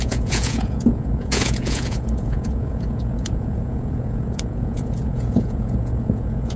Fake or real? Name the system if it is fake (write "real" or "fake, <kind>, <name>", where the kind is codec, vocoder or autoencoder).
fake, vocoder, Vocos